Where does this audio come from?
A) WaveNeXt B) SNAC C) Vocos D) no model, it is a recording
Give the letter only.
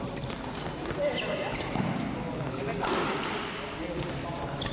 D